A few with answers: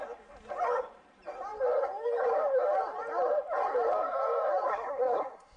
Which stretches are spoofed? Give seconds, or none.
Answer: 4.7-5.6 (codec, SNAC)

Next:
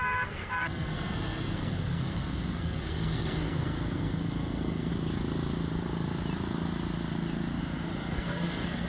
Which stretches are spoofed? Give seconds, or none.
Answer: 0.0-4.9 (codec, SNAC); 7.6-8.9

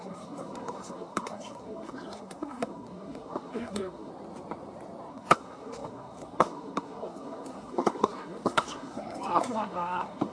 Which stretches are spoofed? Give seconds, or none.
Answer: 0.0-4.1 (codec, SNAC); 5.1-10.3

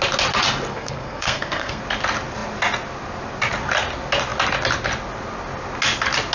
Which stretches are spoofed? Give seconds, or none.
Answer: 0.7-1.8 (codec, SNAC)

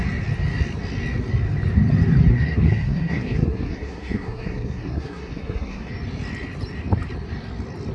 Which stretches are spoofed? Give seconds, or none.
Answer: 2.3-5.9 (codec, SNAC)

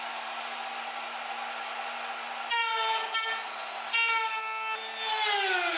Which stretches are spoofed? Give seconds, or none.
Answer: none

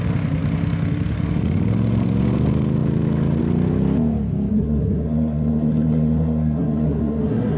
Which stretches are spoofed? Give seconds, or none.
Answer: 4.5-7.6 (codec, SNAC)

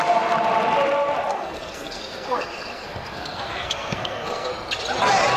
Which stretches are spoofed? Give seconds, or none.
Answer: 1.3-4.5 (codec, SNAC)